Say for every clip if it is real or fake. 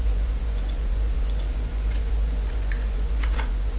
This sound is fake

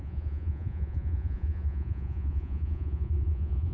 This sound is fake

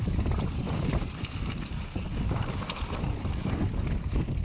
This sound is real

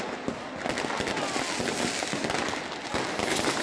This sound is real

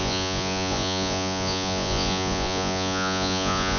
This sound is fake